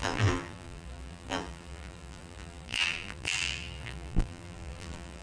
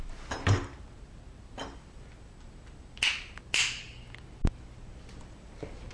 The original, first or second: second